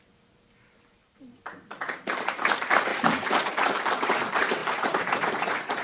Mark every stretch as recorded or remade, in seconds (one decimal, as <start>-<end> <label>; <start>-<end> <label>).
0.0-2.9 remade; 2.9-3.9 recorded; 3.9-5.8 remade